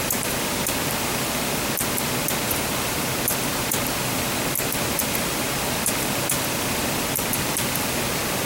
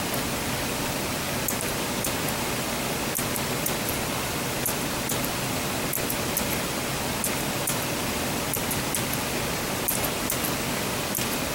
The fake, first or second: first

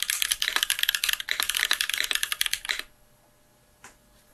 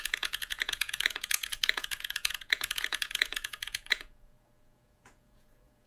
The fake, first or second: second